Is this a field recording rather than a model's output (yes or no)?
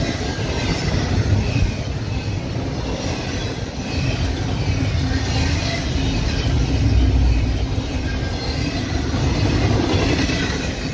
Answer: yes